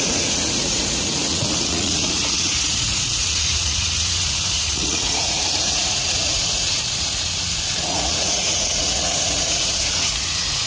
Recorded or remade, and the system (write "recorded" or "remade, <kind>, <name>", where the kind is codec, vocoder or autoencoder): remade, vocoder, Vocos